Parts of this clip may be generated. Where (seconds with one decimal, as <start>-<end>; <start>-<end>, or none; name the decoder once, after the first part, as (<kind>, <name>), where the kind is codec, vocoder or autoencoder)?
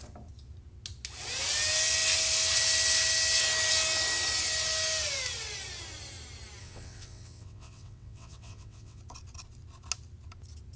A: 6.6-9.0 (vocoder, WaveNeXt)